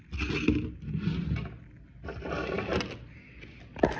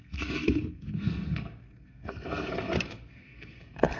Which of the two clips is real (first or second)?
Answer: first